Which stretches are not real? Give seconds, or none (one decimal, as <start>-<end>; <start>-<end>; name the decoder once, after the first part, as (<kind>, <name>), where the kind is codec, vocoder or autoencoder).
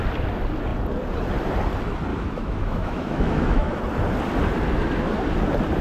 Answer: 2.1-3.8 (autoencoder, DAC-VAE)